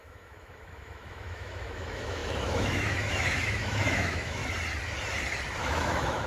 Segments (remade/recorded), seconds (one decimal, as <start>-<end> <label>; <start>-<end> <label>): 0.0-4.4 remade; 4.4-5.6 recorded; 5.6-6.3 remade